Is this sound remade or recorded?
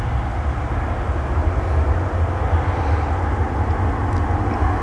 recorded